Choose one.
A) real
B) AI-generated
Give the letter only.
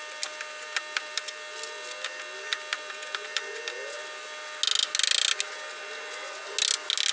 A